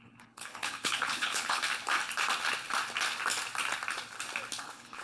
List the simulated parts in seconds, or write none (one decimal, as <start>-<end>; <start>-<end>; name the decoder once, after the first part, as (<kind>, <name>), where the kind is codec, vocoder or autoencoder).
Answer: 0.0-1.6 (codec, HILCodec); 4.6-5.0